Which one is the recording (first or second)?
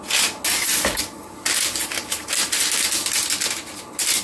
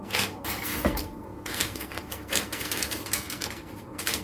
first